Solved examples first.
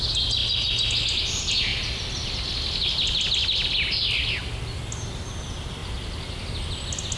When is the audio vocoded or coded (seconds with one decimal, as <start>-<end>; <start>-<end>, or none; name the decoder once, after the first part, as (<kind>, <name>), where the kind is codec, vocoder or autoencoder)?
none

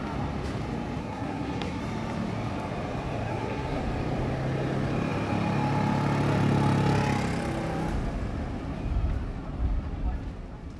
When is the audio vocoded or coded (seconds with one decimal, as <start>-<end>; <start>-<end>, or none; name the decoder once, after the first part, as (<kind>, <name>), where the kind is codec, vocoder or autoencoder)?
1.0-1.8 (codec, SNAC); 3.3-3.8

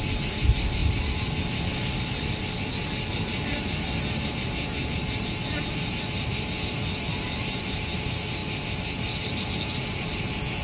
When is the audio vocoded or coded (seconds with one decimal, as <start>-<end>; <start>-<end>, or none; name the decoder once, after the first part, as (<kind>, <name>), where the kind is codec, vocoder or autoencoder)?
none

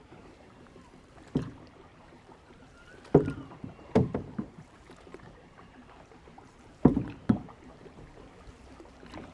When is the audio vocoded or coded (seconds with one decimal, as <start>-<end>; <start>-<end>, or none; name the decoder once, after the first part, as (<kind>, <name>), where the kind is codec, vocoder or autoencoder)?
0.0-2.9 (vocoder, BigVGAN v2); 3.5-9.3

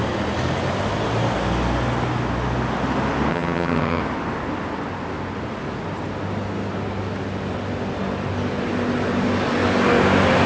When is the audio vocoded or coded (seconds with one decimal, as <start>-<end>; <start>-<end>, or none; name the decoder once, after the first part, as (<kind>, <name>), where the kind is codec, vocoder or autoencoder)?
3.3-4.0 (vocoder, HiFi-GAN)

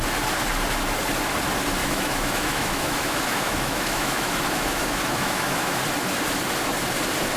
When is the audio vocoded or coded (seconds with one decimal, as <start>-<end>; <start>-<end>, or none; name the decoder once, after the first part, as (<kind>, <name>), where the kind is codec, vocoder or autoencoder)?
1.8-5.8 (autoencoder, DAC-VAE)